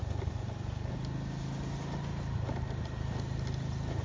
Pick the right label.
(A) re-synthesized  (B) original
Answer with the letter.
B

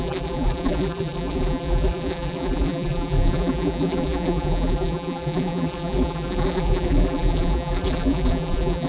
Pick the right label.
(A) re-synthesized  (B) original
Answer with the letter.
A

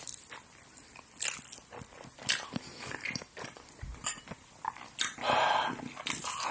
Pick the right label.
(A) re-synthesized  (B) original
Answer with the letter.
A